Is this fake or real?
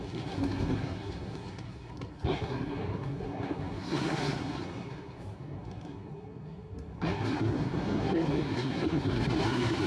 fake